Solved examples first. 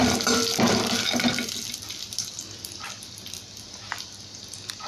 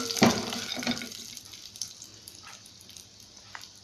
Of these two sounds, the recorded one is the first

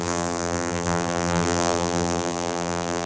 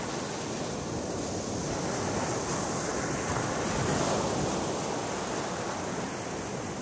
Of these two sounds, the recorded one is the second